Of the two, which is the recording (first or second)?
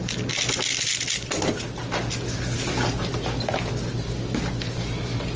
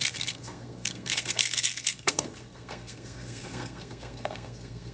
first